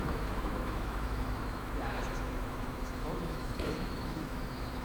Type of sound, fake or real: fake